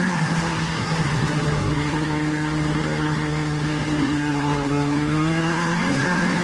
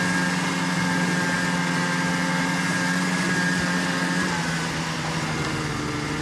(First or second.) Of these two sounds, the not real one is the first